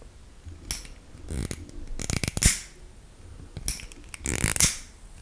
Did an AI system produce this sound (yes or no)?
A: no